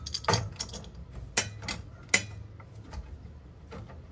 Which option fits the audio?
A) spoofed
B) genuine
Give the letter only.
B